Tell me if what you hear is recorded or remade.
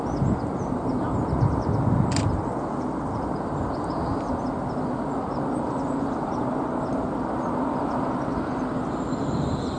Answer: recorded